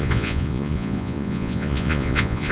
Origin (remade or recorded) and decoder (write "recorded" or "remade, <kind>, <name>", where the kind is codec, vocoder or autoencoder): remade, vocoder, Vocos